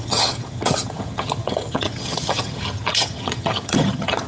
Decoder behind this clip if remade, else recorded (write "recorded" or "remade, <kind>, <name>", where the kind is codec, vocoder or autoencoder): remade, vocoder, HiFi-GAN